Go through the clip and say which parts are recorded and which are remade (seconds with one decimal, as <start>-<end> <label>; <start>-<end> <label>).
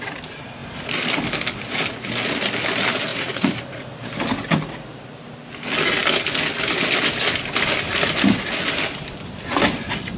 0.0-3.1 recorded; 3.1-3.9 remade; 3.9-10.2 recorded